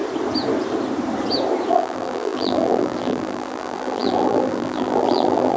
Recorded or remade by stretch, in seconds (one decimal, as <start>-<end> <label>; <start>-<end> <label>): 0.0-1.7 recorded; 1.7-5.6 remade